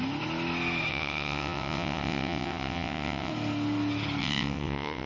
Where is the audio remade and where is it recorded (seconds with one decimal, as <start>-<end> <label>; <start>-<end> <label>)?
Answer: 0.0-0.9 recorded; 0.9-3.3 remade; 3.3-4.2 recorded; 4.2-5.1 remade